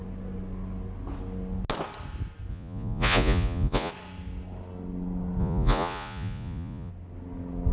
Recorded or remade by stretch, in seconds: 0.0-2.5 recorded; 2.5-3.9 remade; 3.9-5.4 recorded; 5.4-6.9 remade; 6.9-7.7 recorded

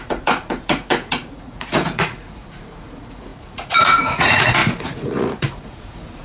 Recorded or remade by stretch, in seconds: 0.0-6.2 remade